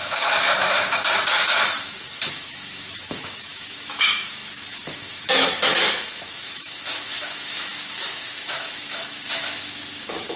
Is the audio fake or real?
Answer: fake